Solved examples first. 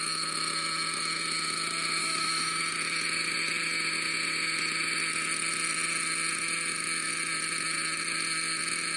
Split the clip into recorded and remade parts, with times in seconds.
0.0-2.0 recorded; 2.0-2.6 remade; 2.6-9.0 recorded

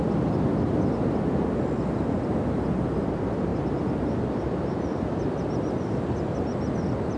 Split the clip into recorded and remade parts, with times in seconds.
0.0-7.2 recorded

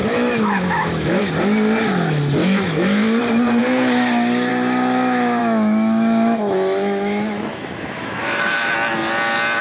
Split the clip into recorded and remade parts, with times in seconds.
0.0-1.3 remade; 1.3-2.4 recorded; 2.4-3.2 remade; 3.2-5.4 recorded; 5.4-8.7 remade; 8.7-9.6 recorded

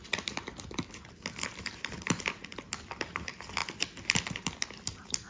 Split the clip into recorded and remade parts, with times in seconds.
0.0-5.3 recorded